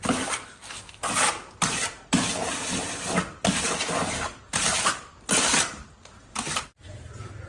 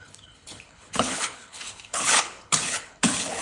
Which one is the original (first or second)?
first